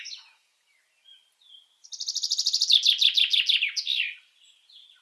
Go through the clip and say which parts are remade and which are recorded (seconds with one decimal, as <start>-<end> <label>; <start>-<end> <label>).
0.0-5.0 recorded